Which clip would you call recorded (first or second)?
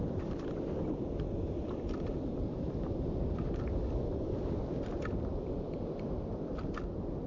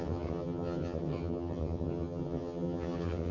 first